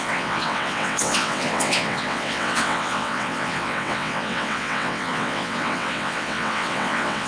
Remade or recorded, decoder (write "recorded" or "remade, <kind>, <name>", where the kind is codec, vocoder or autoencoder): remade, vocoder, WaveNeXt